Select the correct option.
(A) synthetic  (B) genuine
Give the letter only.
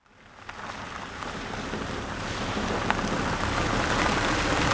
B